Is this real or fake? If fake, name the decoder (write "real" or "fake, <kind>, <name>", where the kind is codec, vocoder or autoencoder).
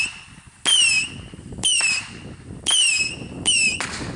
real